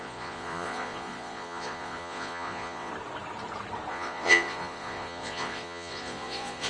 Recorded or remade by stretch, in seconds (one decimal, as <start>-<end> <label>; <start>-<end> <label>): 0.0-2.9 remade; 2.9-3.9 recorded; 3.9-6.7 remade